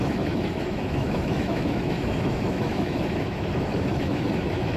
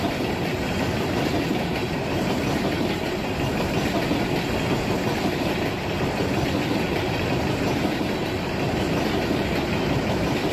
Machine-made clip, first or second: first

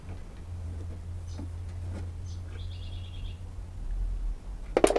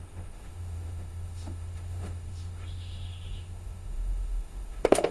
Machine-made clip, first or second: second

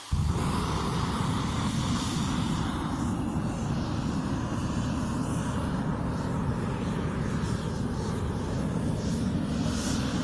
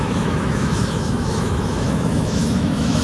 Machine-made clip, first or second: second